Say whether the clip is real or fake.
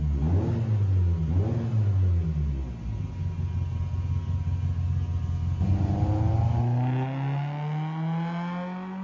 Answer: real